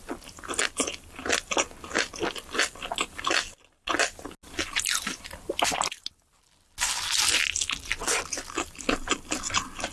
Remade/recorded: recorded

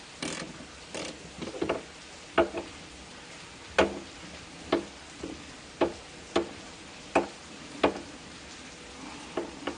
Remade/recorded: recorded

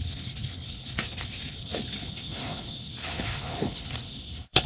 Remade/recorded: remade